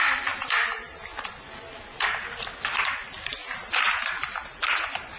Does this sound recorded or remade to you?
recorded